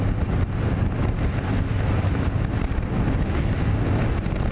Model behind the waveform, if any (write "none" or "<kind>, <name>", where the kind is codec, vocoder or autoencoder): none